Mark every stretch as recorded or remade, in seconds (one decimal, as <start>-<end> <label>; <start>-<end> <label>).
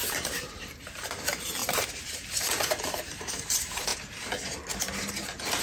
0.0-3.9 remade; 3.9-5.6 recorded